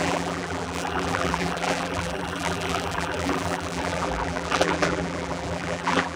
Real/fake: fake